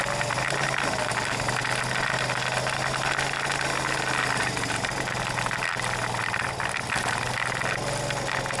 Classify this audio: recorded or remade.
recorded